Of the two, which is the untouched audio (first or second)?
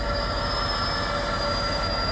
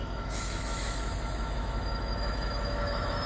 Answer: first